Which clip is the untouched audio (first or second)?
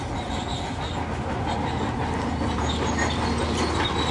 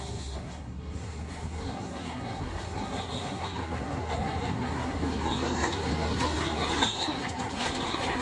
first